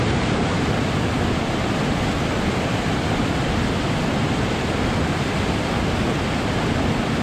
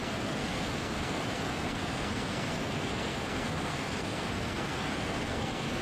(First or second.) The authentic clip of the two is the first